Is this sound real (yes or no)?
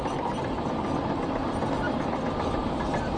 yes